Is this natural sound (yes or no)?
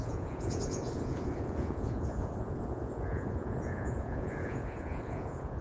no